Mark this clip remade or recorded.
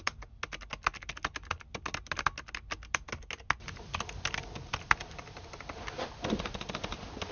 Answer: recorded